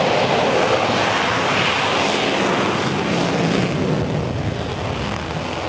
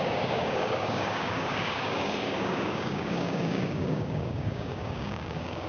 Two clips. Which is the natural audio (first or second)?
first